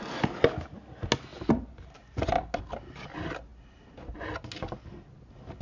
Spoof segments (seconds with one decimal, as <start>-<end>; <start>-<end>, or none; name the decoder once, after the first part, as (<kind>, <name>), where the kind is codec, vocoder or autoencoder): none